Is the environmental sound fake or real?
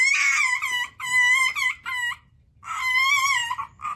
real